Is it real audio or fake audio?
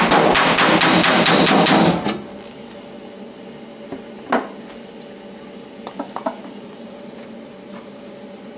real